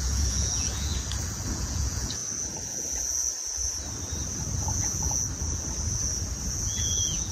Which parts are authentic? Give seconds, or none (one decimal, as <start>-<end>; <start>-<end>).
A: 0.9-1.5; 2.2-6.6